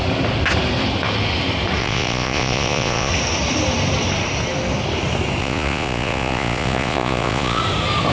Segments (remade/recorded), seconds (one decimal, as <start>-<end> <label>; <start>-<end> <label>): 0.0-1.8 recorded; 1.8-3.1 remade; 3.1-5.4 recorded; 5.4-7.6 remade; 7.6-8.1 recorded

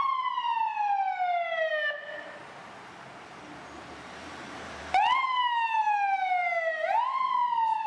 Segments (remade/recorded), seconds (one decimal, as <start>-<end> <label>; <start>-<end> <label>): 0.0-2.6 recorded; 2.6-4.8 remade; 4.8-7.9 recorded

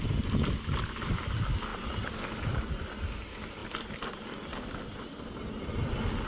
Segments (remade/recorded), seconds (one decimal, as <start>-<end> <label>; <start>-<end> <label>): 0.0-1.7 recorded; 1.7-2.6 remade; 2.6-6.3 recorded

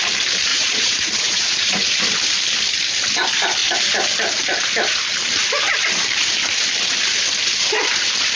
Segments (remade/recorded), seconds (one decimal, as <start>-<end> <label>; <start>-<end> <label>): 0.0-0.5 recorded; 0.5-2.0 remade; 2.0-8.4 recorded